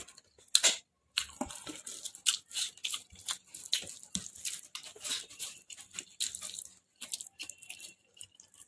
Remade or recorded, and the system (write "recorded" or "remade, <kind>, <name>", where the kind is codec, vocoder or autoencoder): recorded